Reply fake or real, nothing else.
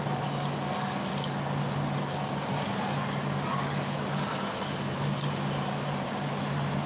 real